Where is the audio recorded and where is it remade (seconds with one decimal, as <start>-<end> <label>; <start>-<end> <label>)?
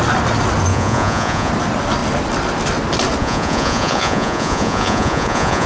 0.0-0.7 recorded; 0.7-1.5 remade; 1.5-3.2 recorded; 3.2-5.7 remade